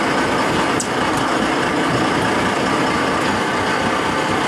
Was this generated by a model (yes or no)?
no